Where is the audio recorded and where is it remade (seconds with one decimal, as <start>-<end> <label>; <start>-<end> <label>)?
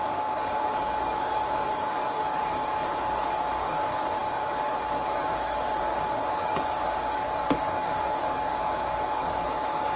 0.0-10.0 remade